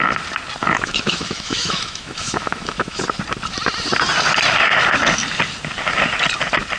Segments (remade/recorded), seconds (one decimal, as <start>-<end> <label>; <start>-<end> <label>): 0.0-0.6 recorded; 0.6-3.0 remade; 3.0-6.8 recorded